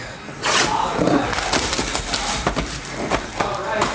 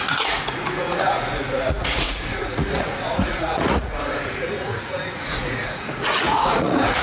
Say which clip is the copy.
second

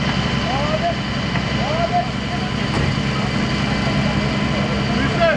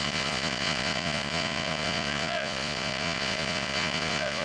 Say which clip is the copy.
second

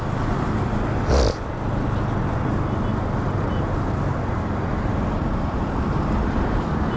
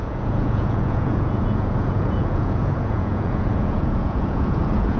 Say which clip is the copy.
second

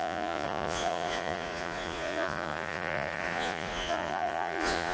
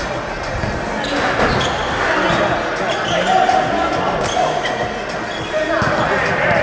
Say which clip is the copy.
first